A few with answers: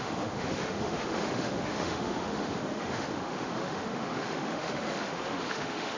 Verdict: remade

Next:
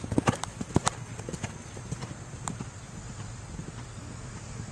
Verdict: recorded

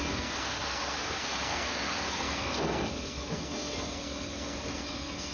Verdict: remade